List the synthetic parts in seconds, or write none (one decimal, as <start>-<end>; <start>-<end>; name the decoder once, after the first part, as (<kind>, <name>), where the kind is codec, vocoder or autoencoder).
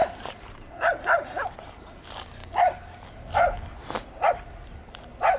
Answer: 0.0-0.9 (vocoder, BigVGAN v2)